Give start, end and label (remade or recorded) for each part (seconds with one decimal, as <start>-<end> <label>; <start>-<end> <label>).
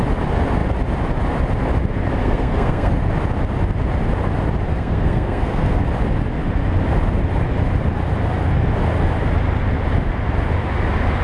0.0-2.2 recorded; 2.2-2.9 remade; 2.9-4.7 recorded; 4.7-5.8 remade; 5.8-11.2 recorded